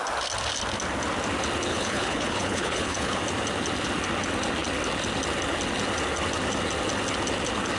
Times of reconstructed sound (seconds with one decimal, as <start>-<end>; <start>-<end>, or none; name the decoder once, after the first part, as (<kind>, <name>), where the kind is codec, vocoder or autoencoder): 1.7-3.2 (codec, HILCodec)